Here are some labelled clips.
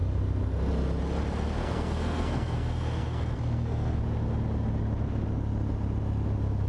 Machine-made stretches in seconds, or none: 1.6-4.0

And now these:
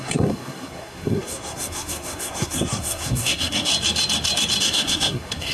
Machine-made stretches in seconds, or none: 0.0-3.7; 4.6-5.5

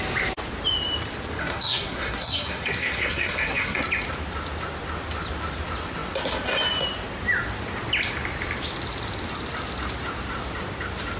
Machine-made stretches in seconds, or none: 1.4-3.8

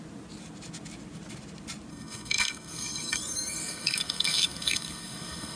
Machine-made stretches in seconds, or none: 1.9-5.6